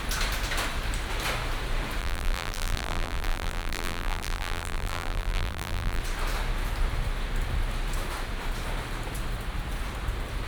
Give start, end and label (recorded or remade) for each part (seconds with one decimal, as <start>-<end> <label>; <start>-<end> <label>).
0.0-2.0 recorded; 2.0-6.0 remade; 6.0-10.5 recorded